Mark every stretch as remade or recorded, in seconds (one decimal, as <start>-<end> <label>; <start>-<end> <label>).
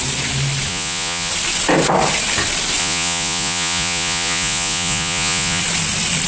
0.0-0.7 recorded; 0.7-1.3 remade; 1.3-2.8 recorded; 2.8-5.6 remade; 5.6-6.3 recorded